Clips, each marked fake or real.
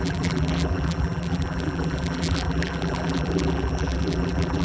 fake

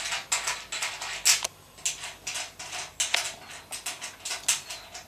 real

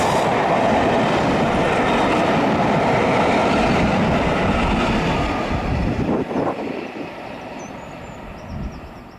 fake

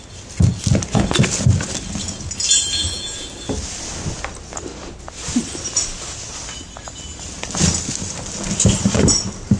real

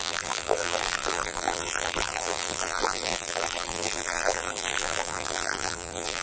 fake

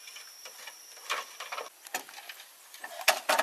real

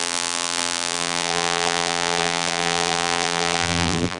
fake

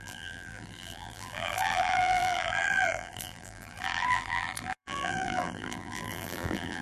fake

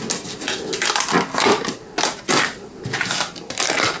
real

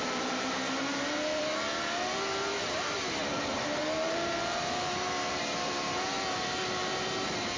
fake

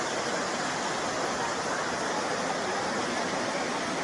real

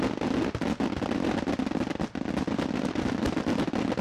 real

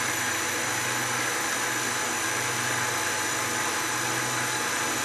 real